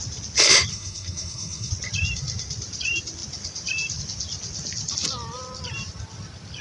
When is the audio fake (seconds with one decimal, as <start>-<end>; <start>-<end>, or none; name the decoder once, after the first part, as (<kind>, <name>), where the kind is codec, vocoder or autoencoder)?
0.7-1.7 (codec, SNAC)